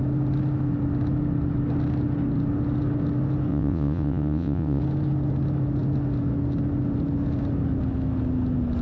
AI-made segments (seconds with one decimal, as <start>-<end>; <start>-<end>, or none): 3.5-4.8